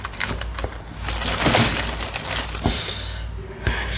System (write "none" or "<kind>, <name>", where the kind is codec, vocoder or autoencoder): none